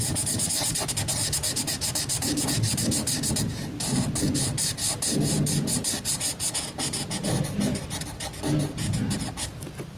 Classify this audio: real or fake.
real